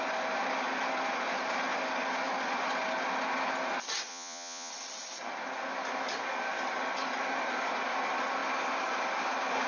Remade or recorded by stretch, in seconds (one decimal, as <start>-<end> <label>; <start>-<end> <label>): 0.0-4.1 recorded; 4.1-4.7 remade; 4.7-9.7 recorded